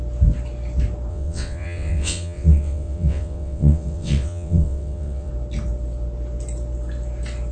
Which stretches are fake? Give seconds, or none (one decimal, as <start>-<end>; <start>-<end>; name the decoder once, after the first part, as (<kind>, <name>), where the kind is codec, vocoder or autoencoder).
1.1-5.3 (vocoder, WaveNeXt)